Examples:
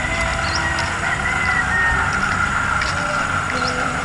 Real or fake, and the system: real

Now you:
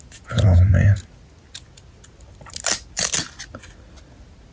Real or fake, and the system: real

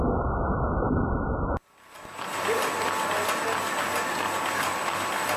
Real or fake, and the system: real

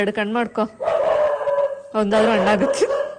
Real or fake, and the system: real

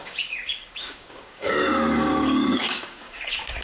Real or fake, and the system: fake, codec, DAC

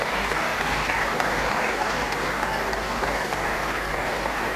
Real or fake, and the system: fake, codec, DAC